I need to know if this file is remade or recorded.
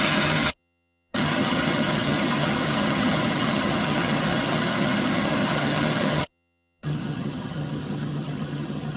remade